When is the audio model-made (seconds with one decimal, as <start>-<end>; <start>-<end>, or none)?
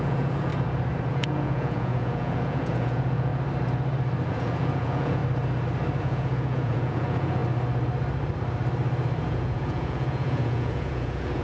0.0-0.5; 1.1-3.3; 4.3-5.2; 6.0-7.4; 9.2-11.4